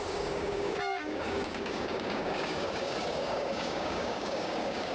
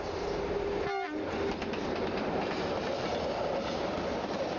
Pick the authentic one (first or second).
second